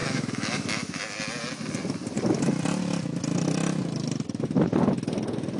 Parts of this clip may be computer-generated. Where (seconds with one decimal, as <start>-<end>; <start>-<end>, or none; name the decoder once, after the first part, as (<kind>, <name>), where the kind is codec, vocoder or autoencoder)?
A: 0.0-1.0 (autoencoder, DAC-VAE)